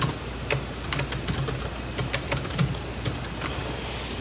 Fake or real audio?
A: real